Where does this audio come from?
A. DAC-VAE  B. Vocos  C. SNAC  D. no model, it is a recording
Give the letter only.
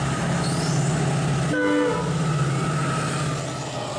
D